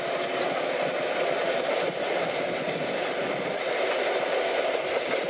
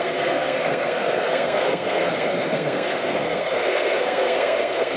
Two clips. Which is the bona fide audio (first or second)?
first